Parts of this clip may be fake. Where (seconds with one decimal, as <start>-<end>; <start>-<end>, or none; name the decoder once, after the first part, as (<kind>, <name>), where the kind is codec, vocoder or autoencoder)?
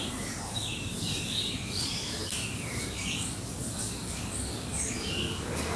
0.0-5.8 (codec, DAC)